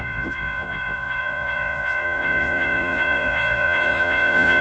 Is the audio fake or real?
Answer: fake